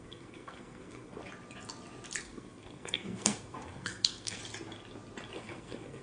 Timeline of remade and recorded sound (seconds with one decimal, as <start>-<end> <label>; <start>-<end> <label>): 0.0-1.2 remade; 1.2-2.2 recorded; 2.2-4.4 remade; 4.4-5.4 recorded; 5.4-6.0 remade